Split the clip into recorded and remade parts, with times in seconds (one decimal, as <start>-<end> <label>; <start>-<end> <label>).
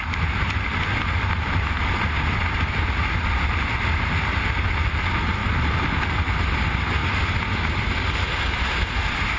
0.0-5.4 recorded; 5.4-6.1 remade; 6.1-9.4 recorded